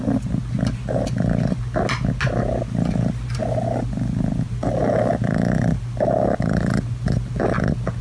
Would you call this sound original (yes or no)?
yes